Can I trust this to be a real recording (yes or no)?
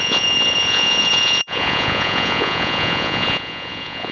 no